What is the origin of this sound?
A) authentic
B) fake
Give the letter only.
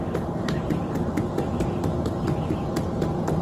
A